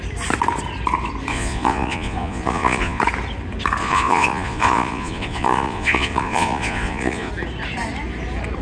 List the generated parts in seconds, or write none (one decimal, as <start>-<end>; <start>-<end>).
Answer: 1.3-3.0; 3.8-7.3